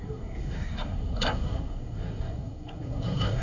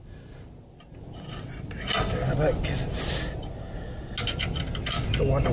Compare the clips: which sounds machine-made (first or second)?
first